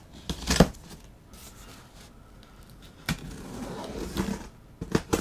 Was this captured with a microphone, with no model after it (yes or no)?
yes